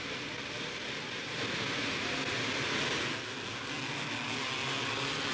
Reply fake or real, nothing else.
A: real